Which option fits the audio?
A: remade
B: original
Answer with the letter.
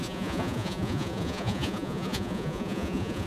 A